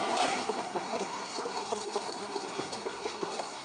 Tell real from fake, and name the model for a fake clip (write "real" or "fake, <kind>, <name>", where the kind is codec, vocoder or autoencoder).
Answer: fake, codec, SNAC